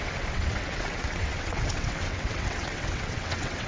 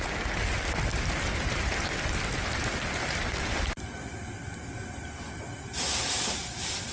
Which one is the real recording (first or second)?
second